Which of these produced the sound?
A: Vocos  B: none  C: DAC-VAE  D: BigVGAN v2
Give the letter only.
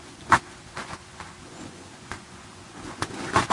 A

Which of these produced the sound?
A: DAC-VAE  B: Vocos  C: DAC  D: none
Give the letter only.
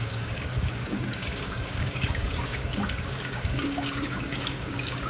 C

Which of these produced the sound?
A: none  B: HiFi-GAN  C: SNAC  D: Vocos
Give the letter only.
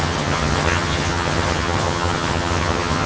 B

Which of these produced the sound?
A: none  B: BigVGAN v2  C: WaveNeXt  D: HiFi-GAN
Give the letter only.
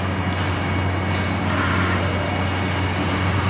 A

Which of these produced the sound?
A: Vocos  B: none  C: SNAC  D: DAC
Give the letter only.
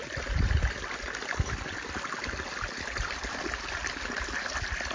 B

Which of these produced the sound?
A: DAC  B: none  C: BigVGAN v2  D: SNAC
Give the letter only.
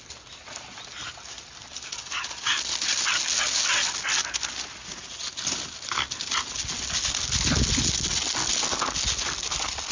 B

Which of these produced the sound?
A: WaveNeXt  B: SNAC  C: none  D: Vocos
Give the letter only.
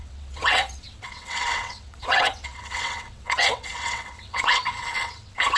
A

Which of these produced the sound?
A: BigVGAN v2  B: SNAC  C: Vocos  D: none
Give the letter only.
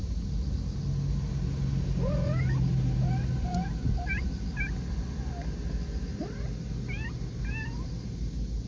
D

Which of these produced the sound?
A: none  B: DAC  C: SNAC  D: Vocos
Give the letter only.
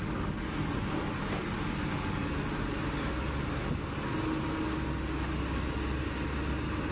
A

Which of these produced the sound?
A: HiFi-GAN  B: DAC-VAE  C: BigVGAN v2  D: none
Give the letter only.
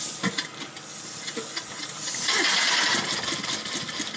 D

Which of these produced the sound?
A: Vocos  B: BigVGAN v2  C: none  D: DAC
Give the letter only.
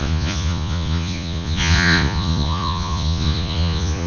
A